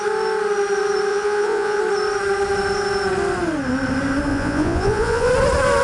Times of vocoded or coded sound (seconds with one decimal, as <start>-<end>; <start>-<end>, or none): 1.1-1.8; 4.3-5.3